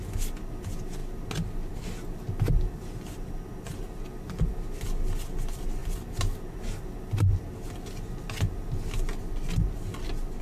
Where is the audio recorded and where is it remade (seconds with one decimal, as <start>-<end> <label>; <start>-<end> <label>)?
0.0-10.4 recorded